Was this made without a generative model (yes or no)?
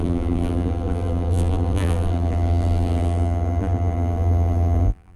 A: no